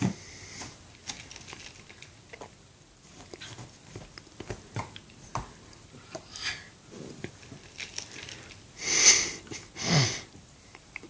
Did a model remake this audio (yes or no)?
no